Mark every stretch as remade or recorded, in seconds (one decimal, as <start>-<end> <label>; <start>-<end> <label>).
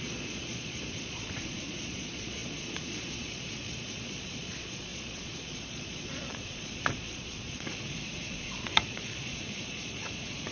0.0-10.5 remade